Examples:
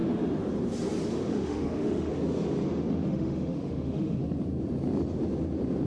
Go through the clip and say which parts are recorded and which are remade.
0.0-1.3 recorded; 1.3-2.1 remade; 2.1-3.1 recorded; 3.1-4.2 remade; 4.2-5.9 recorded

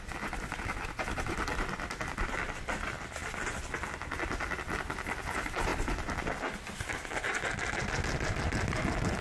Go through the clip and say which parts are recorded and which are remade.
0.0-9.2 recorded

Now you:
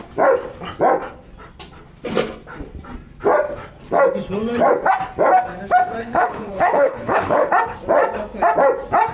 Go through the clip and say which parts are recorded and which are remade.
0.0-6.0 recorded; 6.0-7.5 remade; 7.5-9.1 recorded